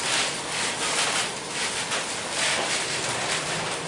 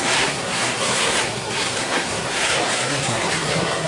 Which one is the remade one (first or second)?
second